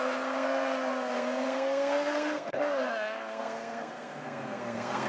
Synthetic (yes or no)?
yes